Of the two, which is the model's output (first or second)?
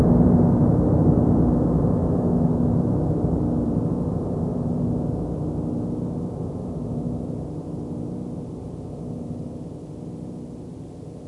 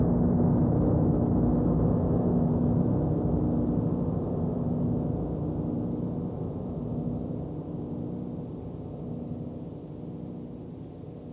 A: first